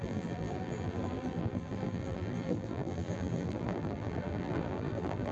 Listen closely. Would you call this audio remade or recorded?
remade